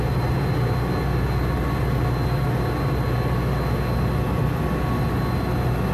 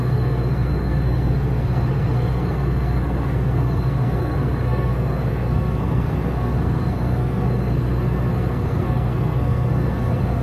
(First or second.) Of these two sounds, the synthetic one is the second